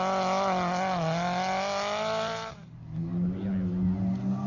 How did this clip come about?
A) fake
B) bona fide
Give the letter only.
B